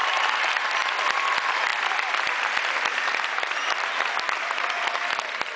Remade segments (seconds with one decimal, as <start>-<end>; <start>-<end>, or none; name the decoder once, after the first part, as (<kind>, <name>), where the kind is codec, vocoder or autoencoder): none